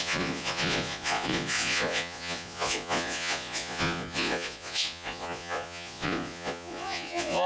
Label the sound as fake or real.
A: fake